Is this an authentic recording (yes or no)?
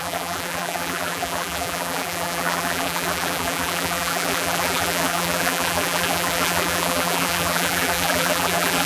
no